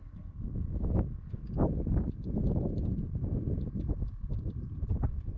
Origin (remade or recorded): recorded